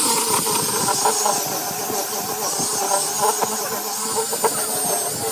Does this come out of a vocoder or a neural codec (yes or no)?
no